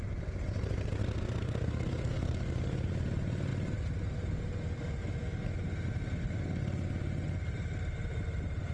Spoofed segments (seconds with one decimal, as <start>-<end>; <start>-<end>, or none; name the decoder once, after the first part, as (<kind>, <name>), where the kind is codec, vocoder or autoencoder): 1.0-2.5 (codec, SNAC)